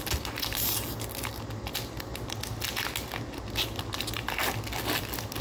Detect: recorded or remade recorded